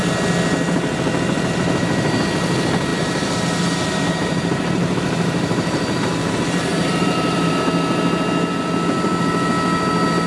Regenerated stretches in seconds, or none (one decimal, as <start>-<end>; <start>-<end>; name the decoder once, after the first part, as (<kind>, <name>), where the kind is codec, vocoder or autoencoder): 2.9-7.5 (vocoder, BigVGAN v2)